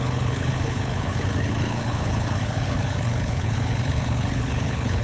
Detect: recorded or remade remade